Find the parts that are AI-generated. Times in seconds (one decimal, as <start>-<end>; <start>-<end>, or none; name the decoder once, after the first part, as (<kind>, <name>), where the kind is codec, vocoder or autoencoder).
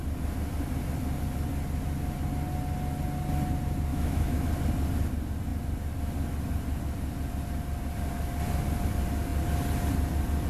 3.9-4.5 (autoencoder, DAC-VAE)